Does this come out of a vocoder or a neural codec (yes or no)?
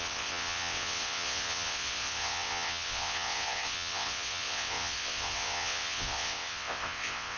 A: yes